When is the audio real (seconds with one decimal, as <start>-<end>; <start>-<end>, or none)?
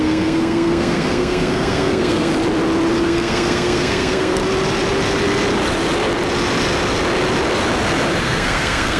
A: 2.3-3.0; 4.4-8.2